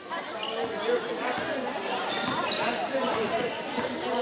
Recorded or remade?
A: recorded